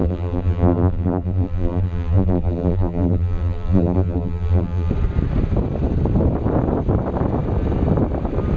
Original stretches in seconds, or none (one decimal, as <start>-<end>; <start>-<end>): 4.9-8.6